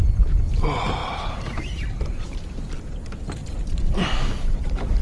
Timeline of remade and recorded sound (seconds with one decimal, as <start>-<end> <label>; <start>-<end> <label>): 0.0-1.0 recorded; 1.0-2.6 remade; 2.6-3.4 recorded; 3.4-5.0 remade

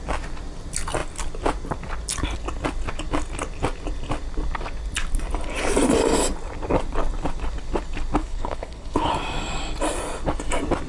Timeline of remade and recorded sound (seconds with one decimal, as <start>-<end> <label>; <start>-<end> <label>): 0.0-8.2 recorded; 8.2-9.1 remade; 9.1-10.9 recorded

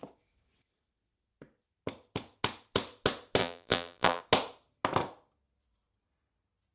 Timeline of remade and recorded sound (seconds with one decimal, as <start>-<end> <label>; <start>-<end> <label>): 0.0-3.4 recorded; 3.4-4.2 remade; 4.2-6.7 recorded

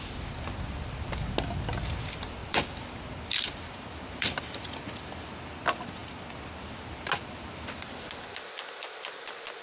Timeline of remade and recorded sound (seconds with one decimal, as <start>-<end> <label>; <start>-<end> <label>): 0.0-2.4 recorded; 2.4-4.4 remade; 4.4-9.6 recorded

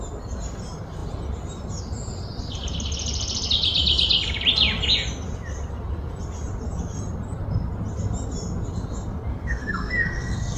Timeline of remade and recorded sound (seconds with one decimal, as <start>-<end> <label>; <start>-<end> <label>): 0.0-9.3 recorded; 9.3-10.6 remade